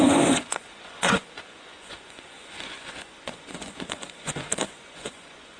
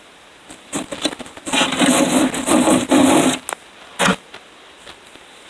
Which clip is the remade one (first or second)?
first